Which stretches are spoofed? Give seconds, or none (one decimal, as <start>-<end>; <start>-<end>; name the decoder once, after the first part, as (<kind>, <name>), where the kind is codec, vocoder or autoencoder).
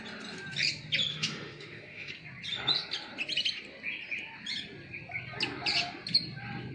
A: 1.1-2.1 (autoencoder, DAC-VAE)